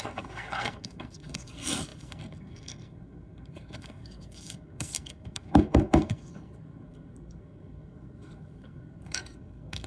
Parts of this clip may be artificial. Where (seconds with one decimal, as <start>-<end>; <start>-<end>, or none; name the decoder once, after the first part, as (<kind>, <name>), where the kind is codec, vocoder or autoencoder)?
0.0-9.9 (codec, SNAC)

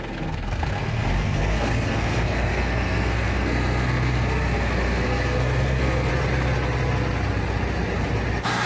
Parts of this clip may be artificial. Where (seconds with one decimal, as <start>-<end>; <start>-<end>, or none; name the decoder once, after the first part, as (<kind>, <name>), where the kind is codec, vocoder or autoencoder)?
0.0-6.1 (codec, SNAC)

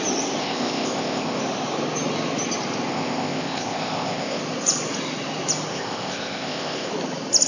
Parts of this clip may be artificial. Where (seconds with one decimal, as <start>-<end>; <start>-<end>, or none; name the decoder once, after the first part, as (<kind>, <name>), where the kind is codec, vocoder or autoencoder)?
0.4-1.4 (codec, ZipCodec); 2.9-4.4; 5.7-6.9

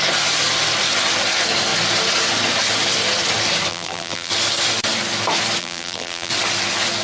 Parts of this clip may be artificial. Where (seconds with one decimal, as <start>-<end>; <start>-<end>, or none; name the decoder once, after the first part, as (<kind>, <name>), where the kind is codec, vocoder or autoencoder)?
3.7-4.3 (vocoder, BigVGAN v2); 5.6-6.3

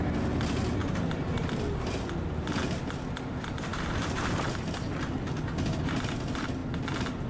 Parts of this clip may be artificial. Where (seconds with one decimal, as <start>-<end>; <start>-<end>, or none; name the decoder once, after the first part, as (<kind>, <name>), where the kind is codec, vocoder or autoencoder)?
0.8-1.4 (vocoder, BigVGAN v2); 3.7-4.7

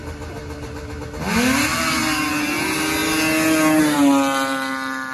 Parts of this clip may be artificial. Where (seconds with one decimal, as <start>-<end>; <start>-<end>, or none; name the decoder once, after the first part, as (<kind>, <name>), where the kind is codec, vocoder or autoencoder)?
none

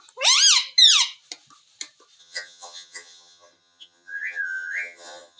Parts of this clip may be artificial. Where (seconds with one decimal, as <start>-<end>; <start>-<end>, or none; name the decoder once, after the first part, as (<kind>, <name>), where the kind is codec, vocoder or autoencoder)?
2.2-5.4 (vocoder, HiFi-GAN)

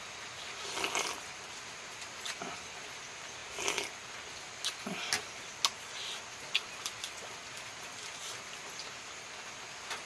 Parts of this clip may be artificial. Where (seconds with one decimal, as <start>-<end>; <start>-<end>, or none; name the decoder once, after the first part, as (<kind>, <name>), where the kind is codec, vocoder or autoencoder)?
none